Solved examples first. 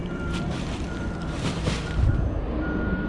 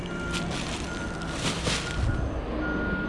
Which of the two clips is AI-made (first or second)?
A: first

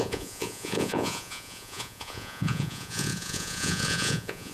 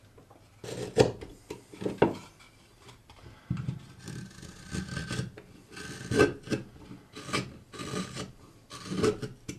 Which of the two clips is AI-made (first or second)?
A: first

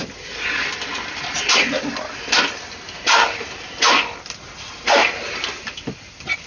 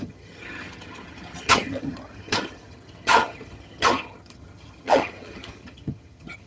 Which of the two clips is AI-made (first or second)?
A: second